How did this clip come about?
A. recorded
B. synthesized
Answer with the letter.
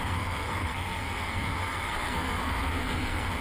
B